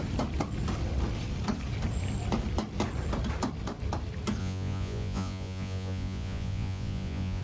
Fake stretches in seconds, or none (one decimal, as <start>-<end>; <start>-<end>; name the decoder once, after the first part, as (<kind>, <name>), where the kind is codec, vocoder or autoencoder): 4.4-7.4 (vocoder, Vocos)